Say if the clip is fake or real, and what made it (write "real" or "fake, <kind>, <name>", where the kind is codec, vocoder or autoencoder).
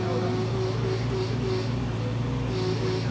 real